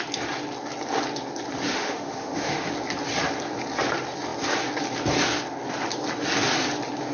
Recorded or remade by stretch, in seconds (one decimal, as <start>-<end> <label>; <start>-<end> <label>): 0.0-1.7 recorded; 1.7-2.7 remade; 2.7-7.1 recorded